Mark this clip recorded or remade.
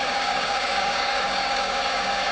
remade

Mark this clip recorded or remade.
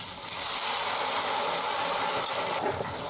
recorded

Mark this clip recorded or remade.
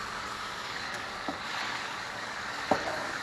remade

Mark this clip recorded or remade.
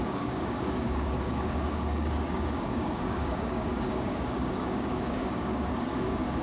remade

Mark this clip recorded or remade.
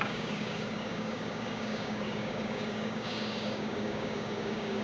remade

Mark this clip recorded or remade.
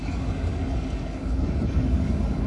remade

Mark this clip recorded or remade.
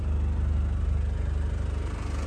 recorded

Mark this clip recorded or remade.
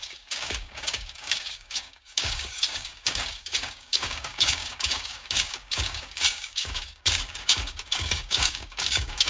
remade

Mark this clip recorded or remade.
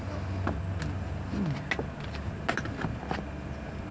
recorded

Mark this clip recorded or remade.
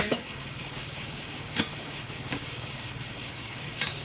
remade